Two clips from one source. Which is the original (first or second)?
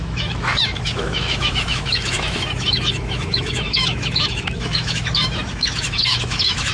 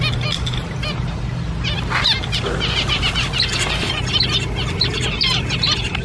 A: second